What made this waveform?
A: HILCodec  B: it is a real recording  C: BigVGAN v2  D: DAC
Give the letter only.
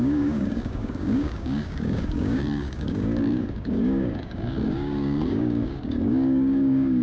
D